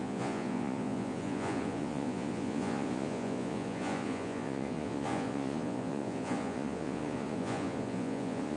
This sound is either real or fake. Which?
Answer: fake